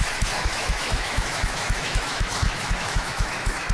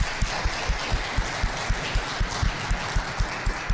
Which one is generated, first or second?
first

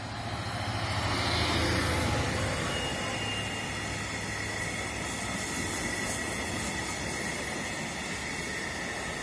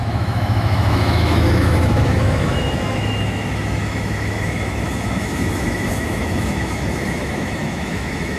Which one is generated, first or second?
second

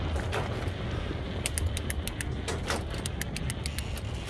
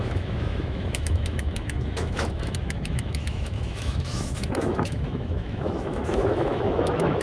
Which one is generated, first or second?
second